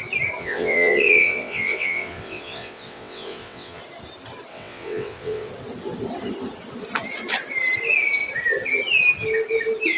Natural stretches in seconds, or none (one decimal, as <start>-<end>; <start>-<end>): 0.0-0.4; 3.8-4.5; 5.5-10.0